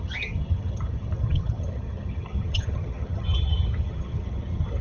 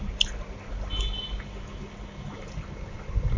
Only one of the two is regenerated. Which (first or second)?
first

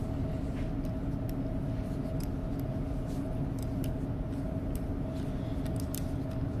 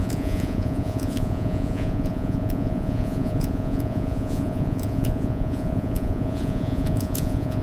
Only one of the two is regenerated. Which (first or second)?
second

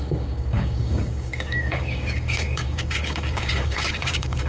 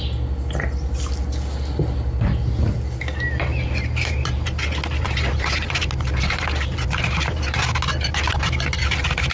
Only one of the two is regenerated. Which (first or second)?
first